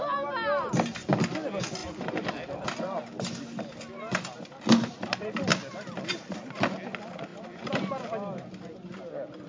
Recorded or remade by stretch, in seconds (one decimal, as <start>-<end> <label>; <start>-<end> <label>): 0.0-9.5 recorded